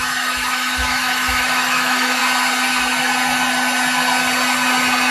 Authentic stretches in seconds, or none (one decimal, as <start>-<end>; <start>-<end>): 2.2-5.1